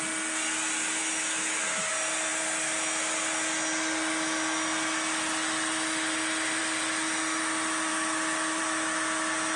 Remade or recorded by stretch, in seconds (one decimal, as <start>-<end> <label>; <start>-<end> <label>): 0.0-1.0 recorded; 1.0-1.9 remade; 1.9-7.9 recorded; 7.9-8.6 remade; 8.6-9.6 recorded